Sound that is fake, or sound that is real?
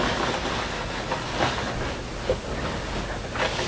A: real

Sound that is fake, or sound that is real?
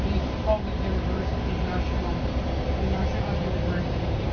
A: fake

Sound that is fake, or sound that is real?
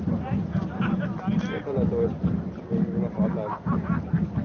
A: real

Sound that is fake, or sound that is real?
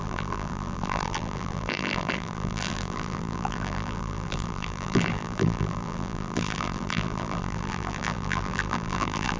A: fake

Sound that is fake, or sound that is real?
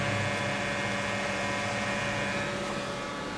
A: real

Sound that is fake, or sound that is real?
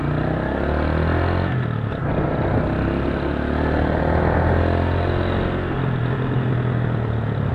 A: real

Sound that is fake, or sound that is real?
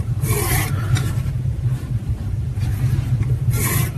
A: fake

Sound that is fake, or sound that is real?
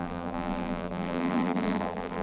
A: fake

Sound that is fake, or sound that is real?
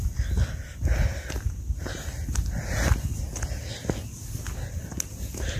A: real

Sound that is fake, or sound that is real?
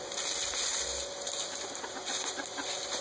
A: real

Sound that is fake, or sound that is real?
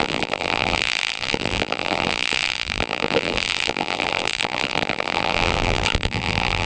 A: fake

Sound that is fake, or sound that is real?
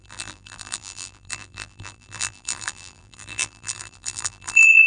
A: fake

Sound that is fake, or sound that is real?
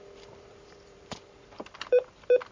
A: fake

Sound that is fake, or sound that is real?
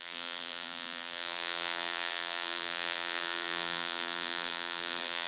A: fake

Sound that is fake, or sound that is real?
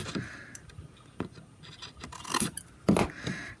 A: real